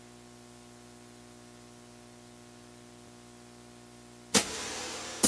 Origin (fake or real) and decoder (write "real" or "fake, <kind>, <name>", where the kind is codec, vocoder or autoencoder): real